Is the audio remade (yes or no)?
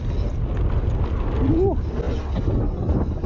no